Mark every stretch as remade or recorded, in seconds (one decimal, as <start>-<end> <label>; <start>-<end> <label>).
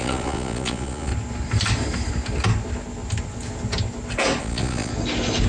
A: 0.0-1.1 remade; 1.1-4.4 recorded; 4.4-4.9 remade; 4.9-5.5 recorded